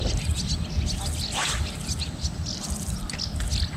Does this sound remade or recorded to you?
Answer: recorded